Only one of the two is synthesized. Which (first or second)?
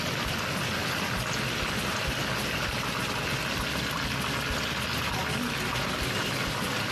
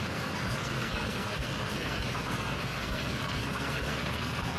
second